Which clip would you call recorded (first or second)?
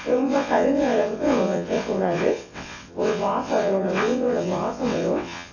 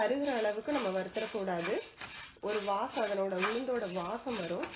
second